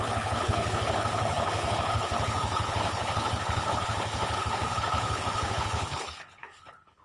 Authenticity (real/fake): fake